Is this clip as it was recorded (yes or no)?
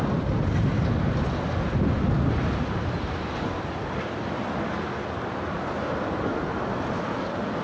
yes